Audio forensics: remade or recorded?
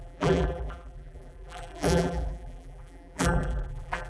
remade